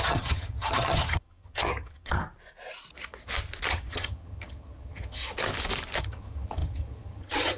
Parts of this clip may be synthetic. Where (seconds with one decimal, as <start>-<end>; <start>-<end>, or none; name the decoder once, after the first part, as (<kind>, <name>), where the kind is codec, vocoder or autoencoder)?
0.0-2.2 (vocoder, HiFi-GAN); 3.7-5.2; 6.0-7.6